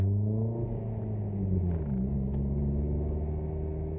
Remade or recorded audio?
recorded